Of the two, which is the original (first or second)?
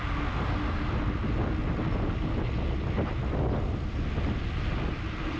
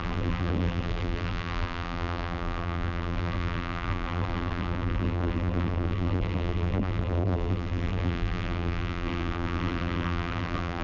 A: first